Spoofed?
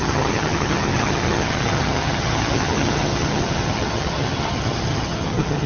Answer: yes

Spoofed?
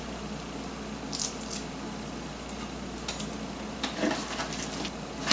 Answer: no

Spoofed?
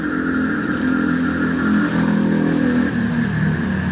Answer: no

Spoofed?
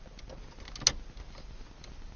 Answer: no